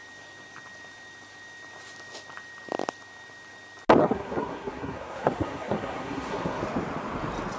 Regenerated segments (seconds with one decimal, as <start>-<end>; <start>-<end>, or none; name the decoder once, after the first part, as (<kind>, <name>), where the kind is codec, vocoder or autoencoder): 4.0-6.6 (codec, SNAC)